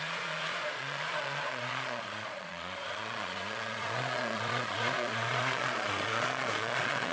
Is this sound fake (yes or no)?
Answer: yes